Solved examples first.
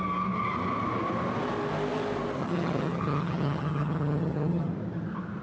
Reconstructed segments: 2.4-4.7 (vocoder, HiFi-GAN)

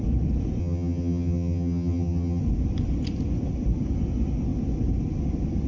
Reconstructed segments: 0.6-2.4 (vocoder, HiFi-GAN)

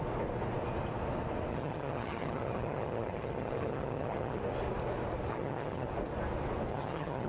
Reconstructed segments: 1.5-4.4 (vocoder, HiFi-GAN); 5.3-5.9; 6.7-7.3

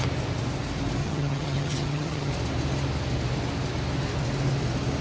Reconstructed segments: 1.0-2.3 (vocoder, HiFi-GAN)

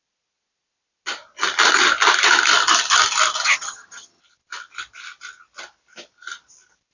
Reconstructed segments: 3.4-4.2 (vocoder, HiFi-GAN)

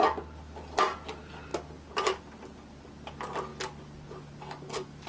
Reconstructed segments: none

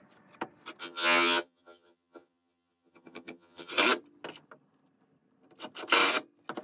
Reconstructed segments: 0.8-3.7 (vocoder, HiFi-GAN)